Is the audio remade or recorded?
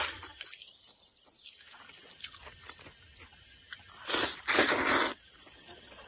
recorded